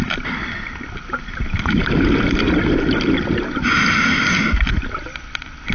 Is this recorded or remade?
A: recorded